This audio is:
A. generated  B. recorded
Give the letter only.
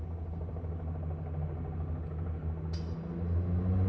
B